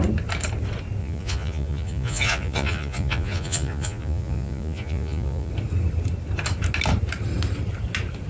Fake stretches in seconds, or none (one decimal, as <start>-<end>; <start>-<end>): 1.0-5.5